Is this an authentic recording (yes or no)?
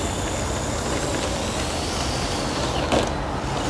yes